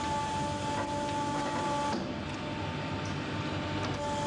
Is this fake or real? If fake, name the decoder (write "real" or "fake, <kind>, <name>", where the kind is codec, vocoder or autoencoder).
real